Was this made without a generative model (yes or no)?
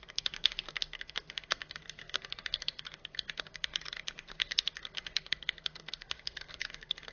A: no